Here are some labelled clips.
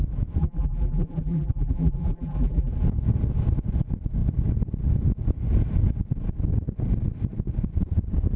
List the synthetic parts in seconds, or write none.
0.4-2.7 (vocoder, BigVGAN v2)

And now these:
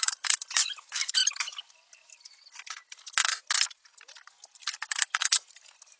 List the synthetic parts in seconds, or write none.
0.0-1.2 (vocoder, BigVGAN v2); 4.8-5.2

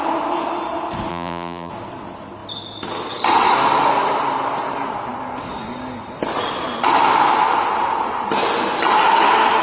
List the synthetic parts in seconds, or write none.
1.1-1.7 (vocoder, BigVGAN v2)

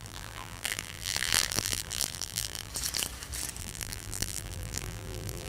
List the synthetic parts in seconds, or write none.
0.0-2.7 (vocoder, BigVGAN v2); 3.6-5.5

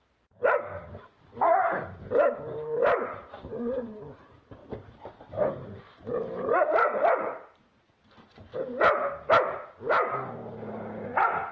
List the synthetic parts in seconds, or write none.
0.0-4.6 (vocoder, BigVGAN v2); 5.5-8.5; 9.9-11.5

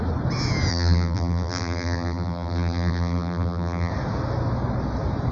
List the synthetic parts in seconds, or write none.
0.7-3.9 (vocoder, BigVGAN v2)